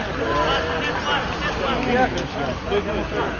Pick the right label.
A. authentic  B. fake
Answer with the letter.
A